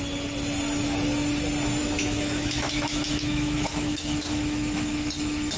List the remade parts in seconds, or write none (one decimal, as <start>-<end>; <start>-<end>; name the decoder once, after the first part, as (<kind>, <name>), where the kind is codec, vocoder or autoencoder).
1.8-5.1 (autoencoder, DAC-VAE)